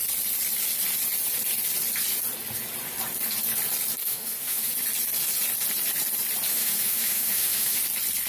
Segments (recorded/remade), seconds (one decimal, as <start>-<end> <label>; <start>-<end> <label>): 0.0-4.0 recorded; 4.0-4.7 remade; 4.7-6.5 recorded; 6.5-7.8 remade; 7.8-8.3 recorded